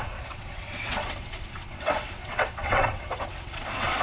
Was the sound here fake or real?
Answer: fake